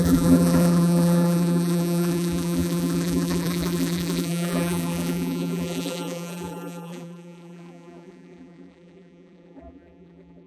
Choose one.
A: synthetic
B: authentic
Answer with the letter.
A